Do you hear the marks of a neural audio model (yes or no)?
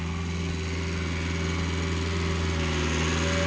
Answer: no